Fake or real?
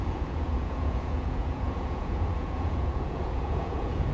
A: fake